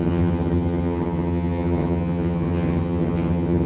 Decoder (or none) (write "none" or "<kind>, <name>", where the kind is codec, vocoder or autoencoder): vocoder, HiFi-GAN